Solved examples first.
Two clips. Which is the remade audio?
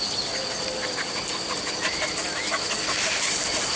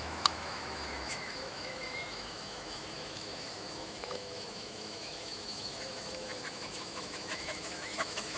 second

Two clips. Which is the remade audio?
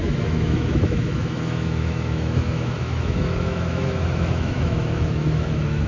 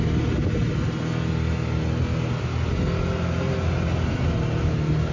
first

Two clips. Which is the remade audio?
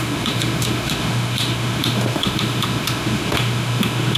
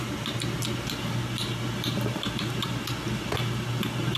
first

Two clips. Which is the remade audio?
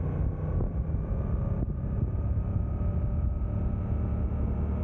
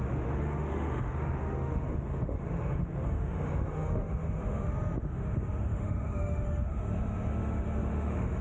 second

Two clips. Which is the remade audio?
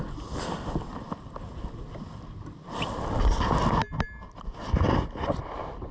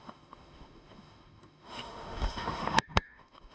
second